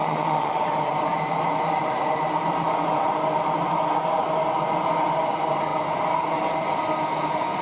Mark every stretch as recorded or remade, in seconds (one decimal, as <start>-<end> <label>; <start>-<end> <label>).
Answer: 0.0-0.6 remade; 0.6-7.6 recorded